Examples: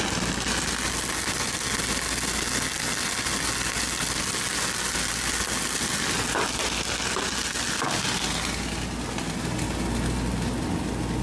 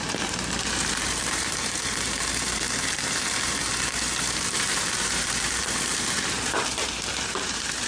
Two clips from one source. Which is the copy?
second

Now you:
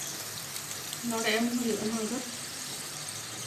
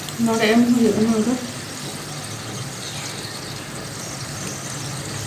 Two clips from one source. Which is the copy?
first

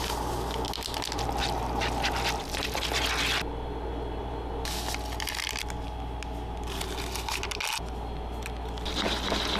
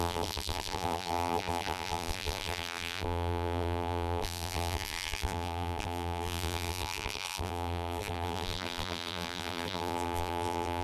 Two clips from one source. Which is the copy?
second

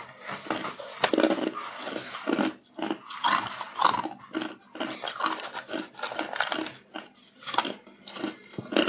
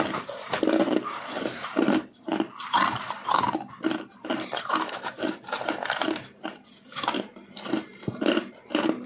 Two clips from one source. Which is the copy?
second